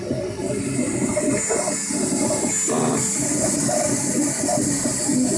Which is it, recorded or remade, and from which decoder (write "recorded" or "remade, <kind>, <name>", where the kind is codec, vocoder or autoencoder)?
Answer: recorded